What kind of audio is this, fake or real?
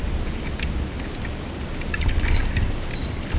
real